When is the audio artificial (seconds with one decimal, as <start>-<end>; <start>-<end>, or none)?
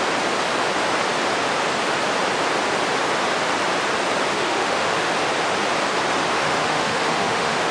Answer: 4.3-5.1; 6.3-7.7